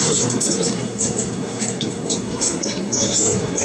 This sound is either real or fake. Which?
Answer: fake